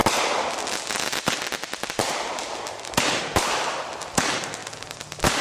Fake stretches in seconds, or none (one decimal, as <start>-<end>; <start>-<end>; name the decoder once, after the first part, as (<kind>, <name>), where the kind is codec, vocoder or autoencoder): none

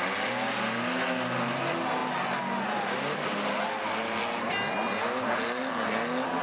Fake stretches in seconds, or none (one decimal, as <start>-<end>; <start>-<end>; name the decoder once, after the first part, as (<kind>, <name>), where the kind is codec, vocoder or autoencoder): none

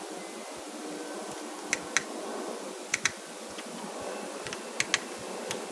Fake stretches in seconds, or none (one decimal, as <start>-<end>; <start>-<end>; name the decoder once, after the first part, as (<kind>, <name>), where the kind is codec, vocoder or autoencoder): 2.0-4.5 (vocoder, Vocos)